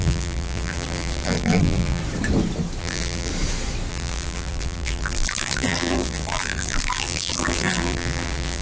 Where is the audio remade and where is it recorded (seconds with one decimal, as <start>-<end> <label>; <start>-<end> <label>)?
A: 0.0-2.0 remade; 2.0-2.8 recorded; 2.8-3.3 remade; 3.3-3.9 recorded; 3.9-8.6 remade